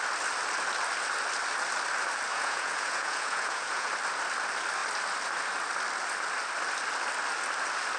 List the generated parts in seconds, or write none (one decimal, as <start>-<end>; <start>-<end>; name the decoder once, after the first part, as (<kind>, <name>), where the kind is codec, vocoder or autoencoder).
2.3-3.9 (vocoder, Vocos)